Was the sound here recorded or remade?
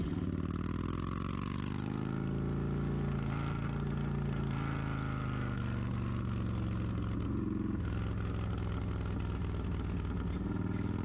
recorded